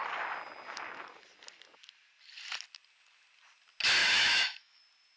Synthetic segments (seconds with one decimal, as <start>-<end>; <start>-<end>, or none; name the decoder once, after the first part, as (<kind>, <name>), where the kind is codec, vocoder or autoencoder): 4.0-4.8 (autoencoder, DAC-VAE)